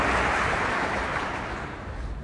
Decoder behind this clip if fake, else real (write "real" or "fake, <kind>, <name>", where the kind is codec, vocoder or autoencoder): real